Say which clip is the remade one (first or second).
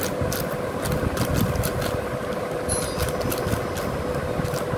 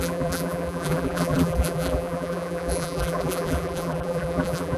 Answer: second